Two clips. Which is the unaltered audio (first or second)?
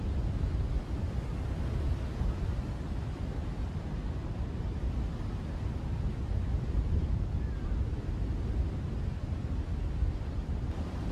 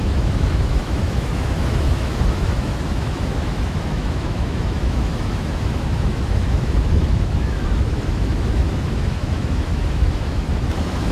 first